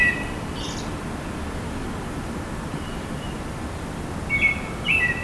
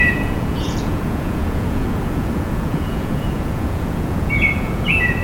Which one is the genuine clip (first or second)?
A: first